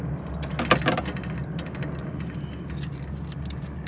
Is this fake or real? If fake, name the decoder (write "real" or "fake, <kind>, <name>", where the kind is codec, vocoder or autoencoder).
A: real